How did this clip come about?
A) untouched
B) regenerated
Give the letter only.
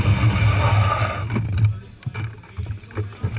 A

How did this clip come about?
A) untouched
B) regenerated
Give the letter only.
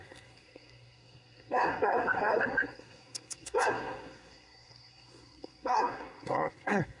B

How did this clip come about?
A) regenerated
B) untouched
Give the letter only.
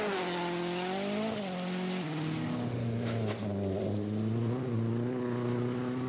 B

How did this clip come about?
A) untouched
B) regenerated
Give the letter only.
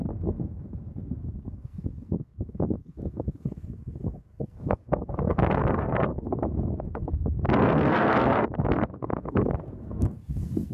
B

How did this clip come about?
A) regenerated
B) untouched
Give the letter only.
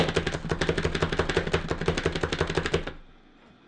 B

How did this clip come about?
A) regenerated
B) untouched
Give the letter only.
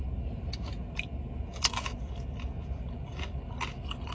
B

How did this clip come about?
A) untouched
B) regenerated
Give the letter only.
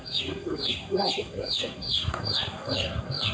B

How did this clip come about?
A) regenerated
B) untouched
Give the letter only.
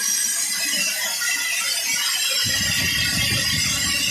B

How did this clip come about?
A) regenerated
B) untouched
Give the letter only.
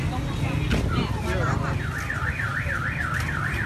B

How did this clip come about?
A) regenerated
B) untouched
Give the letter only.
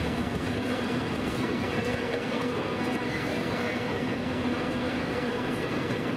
A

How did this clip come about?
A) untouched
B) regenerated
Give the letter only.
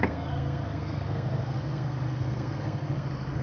B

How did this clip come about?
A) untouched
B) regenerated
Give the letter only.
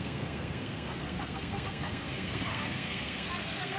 B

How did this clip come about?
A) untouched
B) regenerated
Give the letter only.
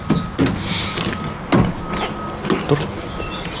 A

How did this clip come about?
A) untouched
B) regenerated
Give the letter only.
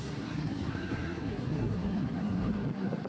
B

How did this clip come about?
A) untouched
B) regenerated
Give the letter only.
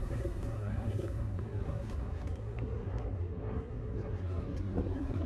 B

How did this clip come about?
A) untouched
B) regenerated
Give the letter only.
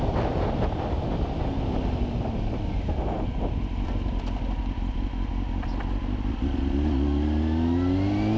A